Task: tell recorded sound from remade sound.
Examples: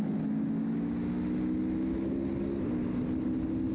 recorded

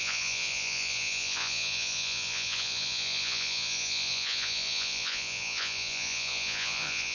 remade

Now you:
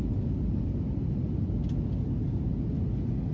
recorded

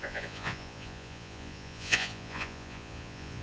remade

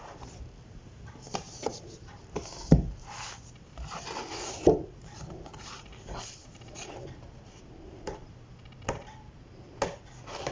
recorded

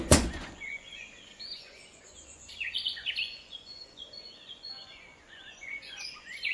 remade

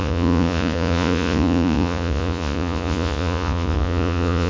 remade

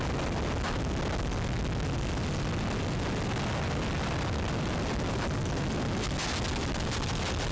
recorded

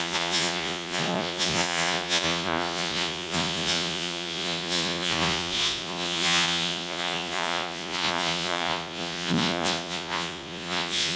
remade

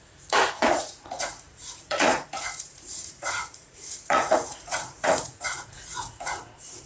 remade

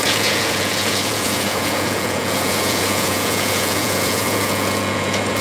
remade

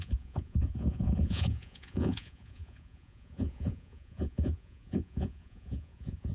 remade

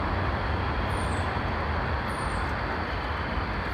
recorded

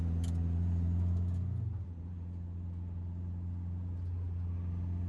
recorded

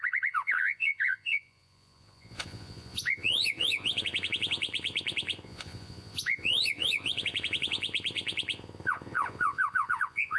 remade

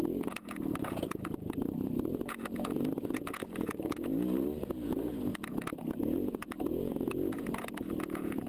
remade